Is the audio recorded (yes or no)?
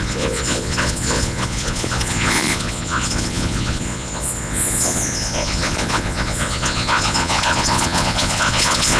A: no